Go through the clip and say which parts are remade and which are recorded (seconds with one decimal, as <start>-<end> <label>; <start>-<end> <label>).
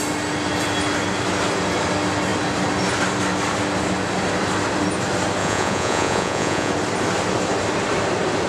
0.0-5.4 recorded; 5.4-6.7 remade; 6.7-8.5 recorded